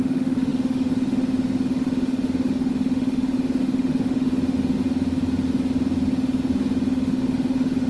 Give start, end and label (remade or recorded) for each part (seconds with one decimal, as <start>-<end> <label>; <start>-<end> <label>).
0.0-4.3 remade; 4.3-6.9 recorded; 6.9-7.9 remade